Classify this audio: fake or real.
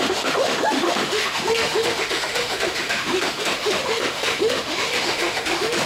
fake